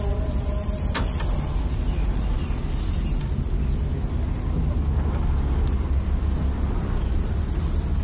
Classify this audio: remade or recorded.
recorded